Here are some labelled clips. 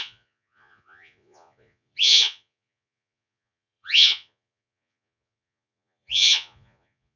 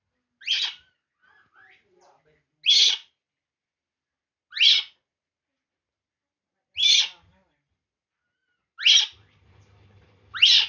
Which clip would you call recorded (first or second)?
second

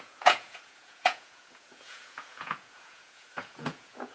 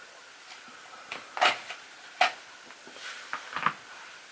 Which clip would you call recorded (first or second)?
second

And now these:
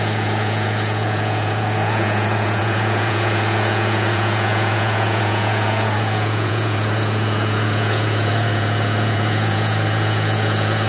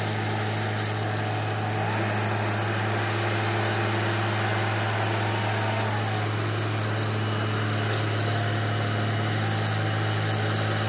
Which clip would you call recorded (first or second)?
second